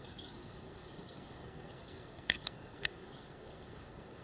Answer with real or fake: fake